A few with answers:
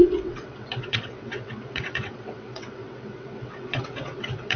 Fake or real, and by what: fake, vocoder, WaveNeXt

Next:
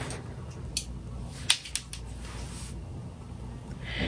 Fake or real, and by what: real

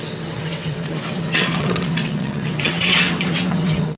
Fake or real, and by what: fake, vocoder, WaveNeXt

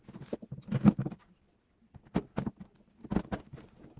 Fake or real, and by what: real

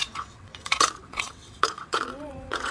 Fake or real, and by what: fake, vocoder, WaveNeXt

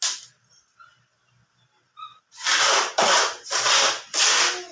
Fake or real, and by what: real